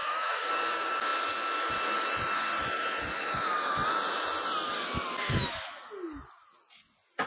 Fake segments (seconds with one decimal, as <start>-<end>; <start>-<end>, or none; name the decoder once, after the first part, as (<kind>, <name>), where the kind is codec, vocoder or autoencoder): 0.0-0.5 (autoencoder, DAC-VAE)